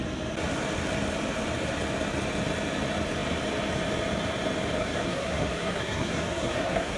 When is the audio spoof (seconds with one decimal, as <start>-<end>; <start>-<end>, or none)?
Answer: 4.8-7.0